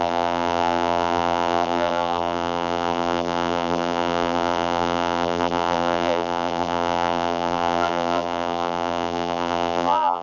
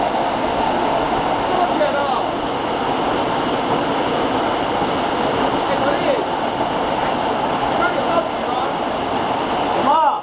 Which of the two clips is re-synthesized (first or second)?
first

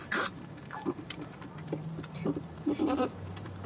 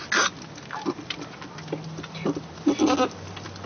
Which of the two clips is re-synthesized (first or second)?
first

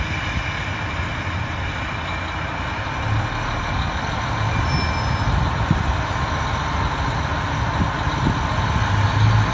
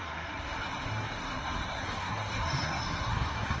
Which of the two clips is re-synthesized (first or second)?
second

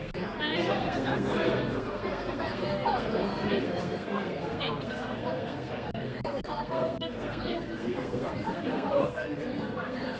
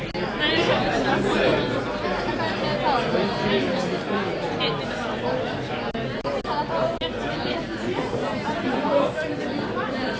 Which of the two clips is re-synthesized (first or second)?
first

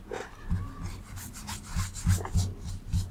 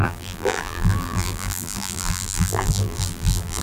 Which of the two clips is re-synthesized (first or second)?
second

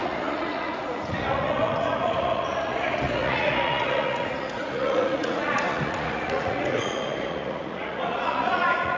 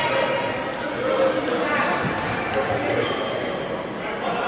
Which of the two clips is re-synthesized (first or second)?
first